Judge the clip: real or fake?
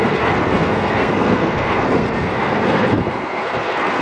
fake